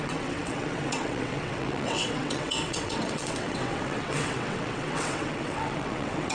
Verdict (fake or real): fake